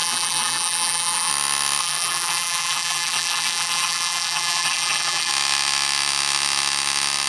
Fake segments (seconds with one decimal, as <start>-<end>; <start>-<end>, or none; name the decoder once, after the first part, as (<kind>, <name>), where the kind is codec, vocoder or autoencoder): 0.0-1.3 (vocoder, BigVGAN v2); 1.8-5.3